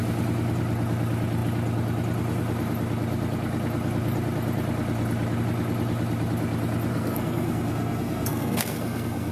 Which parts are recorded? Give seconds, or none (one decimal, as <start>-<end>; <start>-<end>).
0.0-6.9